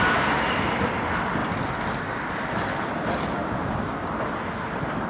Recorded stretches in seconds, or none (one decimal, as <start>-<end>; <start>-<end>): 0.0-5.1